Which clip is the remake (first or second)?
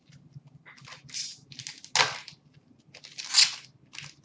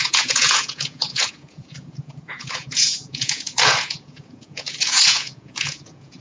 second